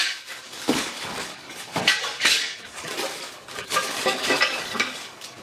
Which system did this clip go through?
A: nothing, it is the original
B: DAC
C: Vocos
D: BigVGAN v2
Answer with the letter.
B